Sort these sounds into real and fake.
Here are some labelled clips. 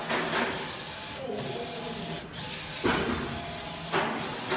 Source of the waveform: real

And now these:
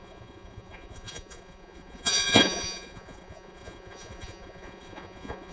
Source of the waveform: fake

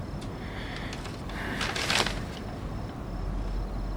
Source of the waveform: real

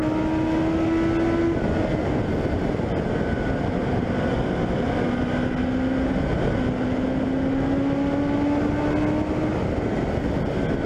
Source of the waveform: real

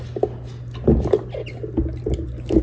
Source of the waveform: real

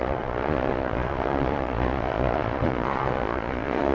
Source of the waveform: fake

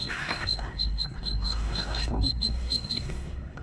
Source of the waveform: fake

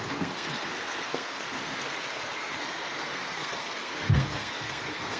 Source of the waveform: fake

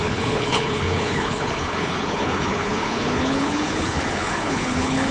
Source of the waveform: fake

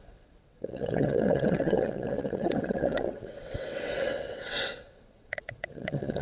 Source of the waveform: fake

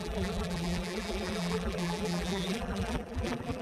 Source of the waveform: fake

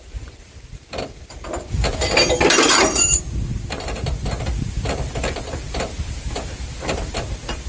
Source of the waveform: fake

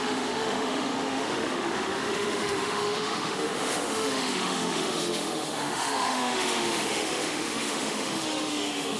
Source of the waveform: fake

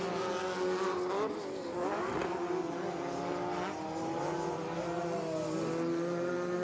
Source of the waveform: real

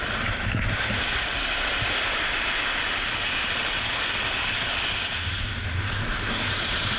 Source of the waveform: real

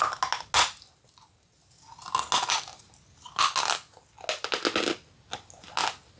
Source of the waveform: real